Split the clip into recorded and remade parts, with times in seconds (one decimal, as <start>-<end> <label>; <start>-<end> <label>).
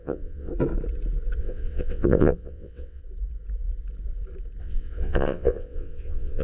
0.0-0.5 remade; 0.5-1.4 recorded; 1.4-3.0 remade; 3.0-4.6 recorded; 4.6-6.4 remade